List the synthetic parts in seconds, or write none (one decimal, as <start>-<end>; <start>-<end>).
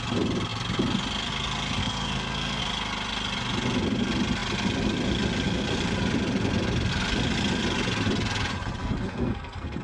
1.8-2.6; 8.8-9.8